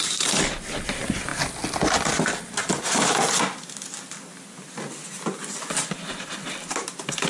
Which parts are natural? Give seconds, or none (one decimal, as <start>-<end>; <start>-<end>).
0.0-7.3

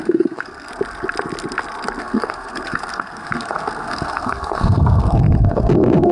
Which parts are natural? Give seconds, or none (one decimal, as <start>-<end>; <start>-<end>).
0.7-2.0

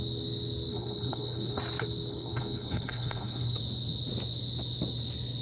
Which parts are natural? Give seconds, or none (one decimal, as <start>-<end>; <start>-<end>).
0.0-0.7; 1.6-2.1; 3.6-5.4

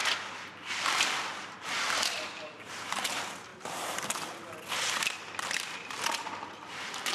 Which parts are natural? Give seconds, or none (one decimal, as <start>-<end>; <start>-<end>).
0.0-0.7; 3.5-5.5

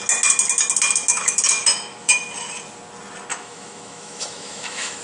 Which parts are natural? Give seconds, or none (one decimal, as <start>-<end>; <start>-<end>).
0.0-1.1; 2.1-3.3

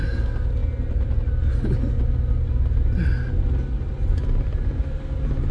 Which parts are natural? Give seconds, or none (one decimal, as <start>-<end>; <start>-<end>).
0.0-5.5

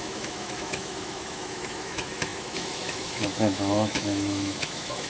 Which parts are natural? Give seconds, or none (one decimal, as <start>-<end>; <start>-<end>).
none

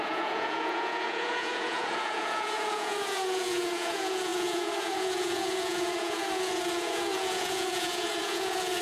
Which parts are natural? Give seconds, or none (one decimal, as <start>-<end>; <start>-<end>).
none